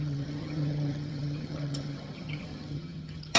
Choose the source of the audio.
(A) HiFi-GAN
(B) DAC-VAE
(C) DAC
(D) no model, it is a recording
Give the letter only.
A